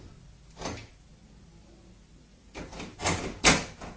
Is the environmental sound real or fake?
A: real